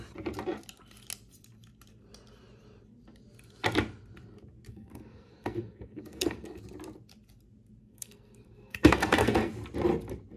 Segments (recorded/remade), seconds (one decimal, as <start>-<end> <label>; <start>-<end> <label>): 0.0-4.7 recorded; 4.7-6.6 remade; 6.6-7.8 recorded; 7.8-9.5 remade; 9.5-10.4 recorded